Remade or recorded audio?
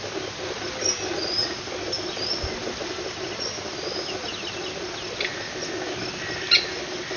recorded